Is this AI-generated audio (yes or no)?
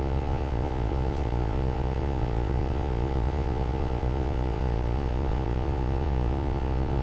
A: yes